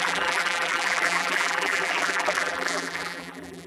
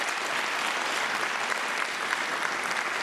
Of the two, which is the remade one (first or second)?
first